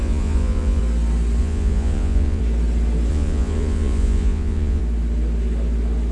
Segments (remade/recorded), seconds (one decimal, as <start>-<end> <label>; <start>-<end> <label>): 0.0-0.8 remade; 0.8-1.4 recorded; 1.4-2.4 remade; 2.4-3.1 recorded; 3.1-4.8 remade; 4.8-6.1 recorded